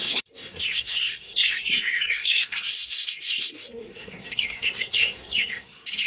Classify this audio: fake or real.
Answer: fake